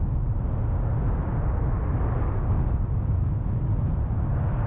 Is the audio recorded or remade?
recorded